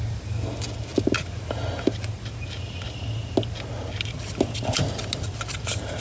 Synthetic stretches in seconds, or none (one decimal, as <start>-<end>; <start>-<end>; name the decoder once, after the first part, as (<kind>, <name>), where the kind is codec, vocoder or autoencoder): none